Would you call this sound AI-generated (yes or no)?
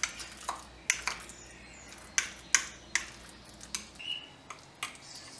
no